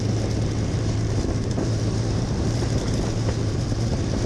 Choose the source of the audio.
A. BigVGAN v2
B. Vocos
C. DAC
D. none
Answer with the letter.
A